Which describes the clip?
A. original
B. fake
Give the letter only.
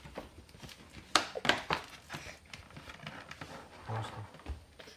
A